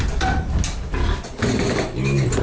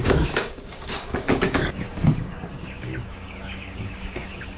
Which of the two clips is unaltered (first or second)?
first